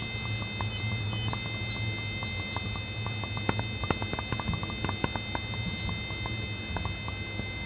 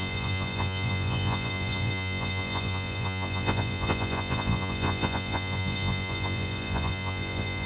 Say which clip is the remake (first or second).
second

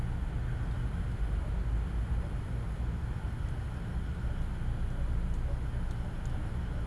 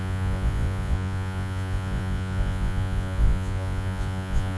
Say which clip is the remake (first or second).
second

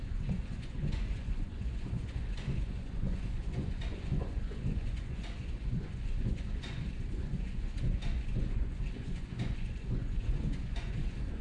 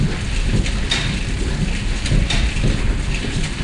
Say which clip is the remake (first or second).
first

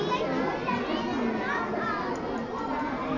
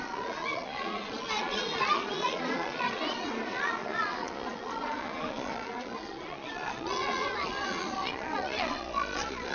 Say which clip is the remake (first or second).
second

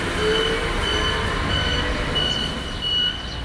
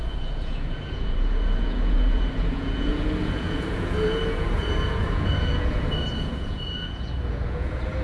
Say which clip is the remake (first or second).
second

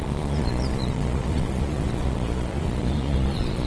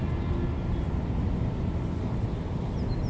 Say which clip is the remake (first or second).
first